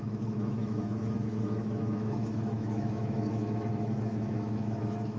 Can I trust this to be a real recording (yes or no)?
no